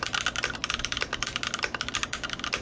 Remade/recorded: recorded